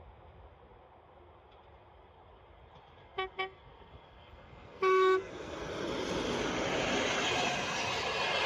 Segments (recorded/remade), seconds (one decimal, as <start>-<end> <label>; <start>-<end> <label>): 0.0-3.0 recorded; 3.0-5.7 remade; 5.7-8.5 recorded